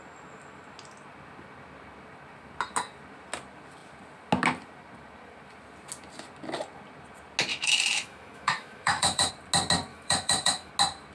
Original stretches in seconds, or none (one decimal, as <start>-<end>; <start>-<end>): 0.0-7.5; 9.3-9.9; 10.7-11.1

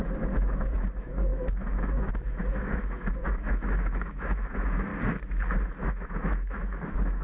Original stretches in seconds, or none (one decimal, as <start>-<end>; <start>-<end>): 4.9-5.9

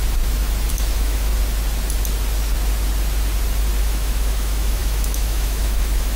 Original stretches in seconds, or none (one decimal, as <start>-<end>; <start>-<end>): 0.0-0.7; 1.3-3.8

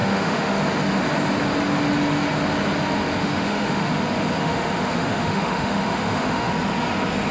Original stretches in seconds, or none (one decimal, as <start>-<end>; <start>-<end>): 0.6-3.2; 3.9-4.4; 6.5-7.3

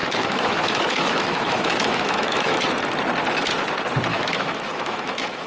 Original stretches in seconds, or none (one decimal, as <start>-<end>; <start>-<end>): 2.6-4.1